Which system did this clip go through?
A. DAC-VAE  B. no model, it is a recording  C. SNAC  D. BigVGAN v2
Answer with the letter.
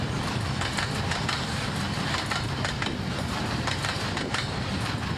D